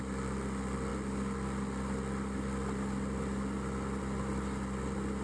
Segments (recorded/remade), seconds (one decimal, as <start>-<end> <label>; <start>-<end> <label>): 0.0-5.2 remade